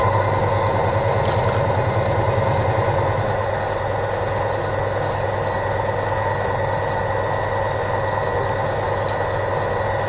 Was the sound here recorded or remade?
recorded